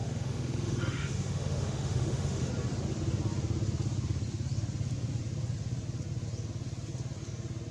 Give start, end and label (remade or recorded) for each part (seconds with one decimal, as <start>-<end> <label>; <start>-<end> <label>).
0.0-2.5 remade; 2.5-7.7 recorded